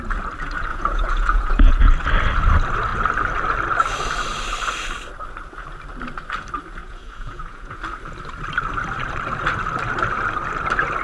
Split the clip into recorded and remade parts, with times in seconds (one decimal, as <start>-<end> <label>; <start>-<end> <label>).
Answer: 0.0-0.7 recorded; 0.7-1.7 remade; 1.7-6.8 recorded; 6.8-7.8 remade; 7.8-11.0 recorded